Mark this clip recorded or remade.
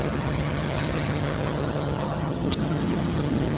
remade